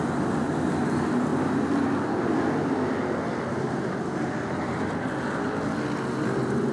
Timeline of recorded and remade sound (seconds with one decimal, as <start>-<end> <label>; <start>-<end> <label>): 0.0-6.7 recorded